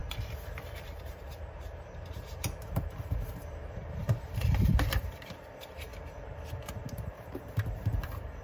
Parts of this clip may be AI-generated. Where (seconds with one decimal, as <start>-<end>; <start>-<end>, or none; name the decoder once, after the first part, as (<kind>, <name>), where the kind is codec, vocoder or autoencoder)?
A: 0.0-5.9 (vocoder, BigVGAN v2); 6.9-8.4